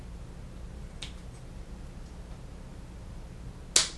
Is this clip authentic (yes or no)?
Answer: yes